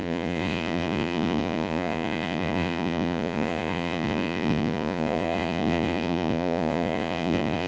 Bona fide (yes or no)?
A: no